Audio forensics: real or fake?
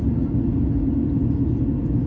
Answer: real